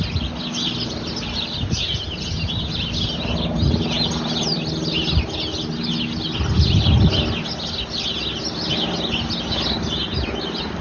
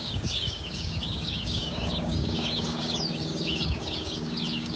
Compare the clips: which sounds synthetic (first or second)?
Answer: second